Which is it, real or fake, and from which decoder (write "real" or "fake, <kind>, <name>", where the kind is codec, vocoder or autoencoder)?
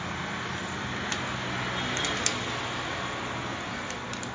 real